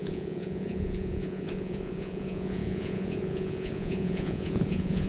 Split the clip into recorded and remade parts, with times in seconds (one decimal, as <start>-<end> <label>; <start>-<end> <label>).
0.0-5.1 remade